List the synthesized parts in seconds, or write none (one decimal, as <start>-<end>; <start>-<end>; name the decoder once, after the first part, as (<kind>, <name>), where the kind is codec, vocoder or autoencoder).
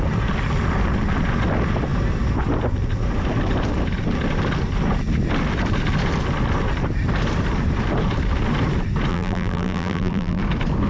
9.1-10.4 (vocoder, BigVGAN v2)